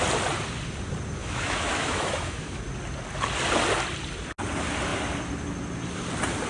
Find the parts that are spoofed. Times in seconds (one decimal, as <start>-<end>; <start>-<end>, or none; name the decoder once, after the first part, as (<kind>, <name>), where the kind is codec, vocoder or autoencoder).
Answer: 1.2-2.6 (autoencoder, DAC-VAE)